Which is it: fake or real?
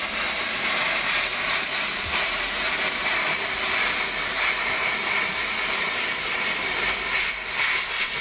real